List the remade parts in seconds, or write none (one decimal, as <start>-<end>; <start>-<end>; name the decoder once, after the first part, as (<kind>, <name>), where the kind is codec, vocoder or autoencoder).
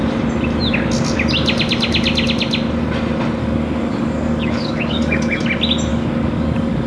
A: 3.4-5.4 (codec, DAC); 5.9-6.9